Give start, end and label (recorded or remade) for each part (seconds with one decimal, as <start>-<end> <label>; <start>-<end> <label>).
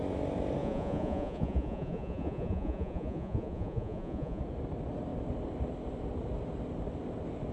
0.0-0.6 recorded; 0.6-4.4 remade; 4.4-7.5 recorded